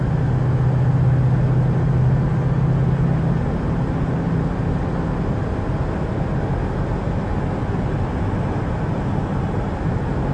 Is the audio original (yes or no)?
yes